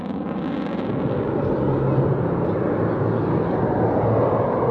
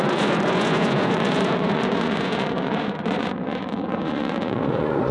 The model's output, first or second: second